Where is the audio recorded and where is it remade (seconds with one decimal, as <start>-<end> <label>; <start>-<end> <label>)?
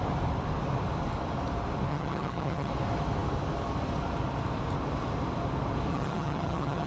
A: 0.0-1.9 recorded; 1.9-2.7 remade; 2.7-5.9 recorded; 5.9-6.9 remade